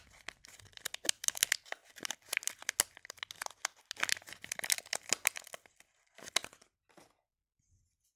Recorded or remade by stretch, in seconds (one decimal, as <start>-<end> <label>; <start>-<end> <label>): 0.0-8.2 recorded